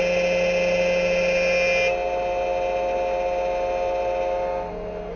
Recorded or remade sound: recorded